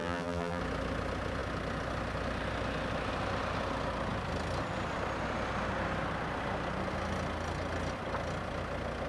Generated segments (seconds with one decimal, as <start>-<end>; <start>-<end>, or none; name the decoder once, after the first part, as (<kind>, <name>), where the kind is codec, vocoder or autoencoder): 0.0-0.6 (vocoder, BigVGAN v2)